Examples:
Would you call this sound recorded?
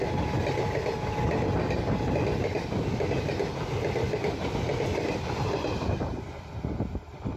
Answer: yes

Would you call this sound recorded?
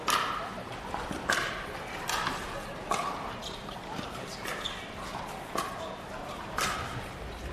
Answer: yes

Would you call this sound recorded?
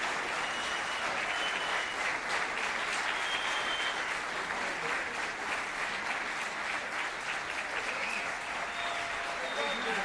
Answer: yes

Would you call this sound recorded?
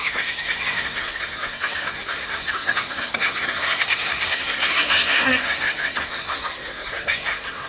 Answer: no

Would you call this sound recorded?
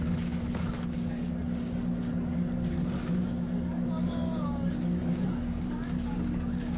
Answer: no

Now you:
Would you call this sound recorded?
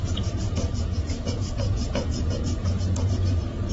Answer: no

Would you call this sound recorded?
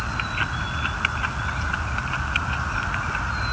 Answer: yes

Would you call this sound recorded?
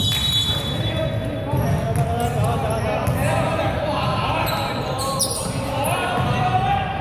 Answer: yes